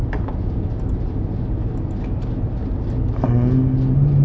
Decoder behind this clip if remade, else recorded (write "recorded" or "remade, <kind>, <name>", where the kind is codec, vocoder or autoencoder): recorded